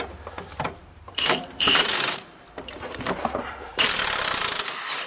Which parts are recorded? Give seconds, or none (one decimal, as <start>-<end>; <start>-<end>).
0.0-0.8; 3.9-5.1